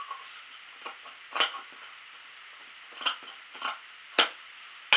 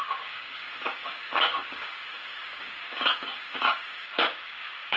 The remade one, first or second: second